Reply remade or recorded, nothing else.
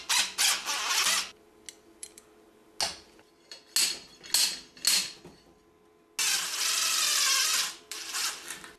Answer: recorded